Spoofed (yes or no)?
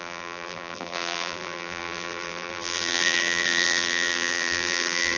yes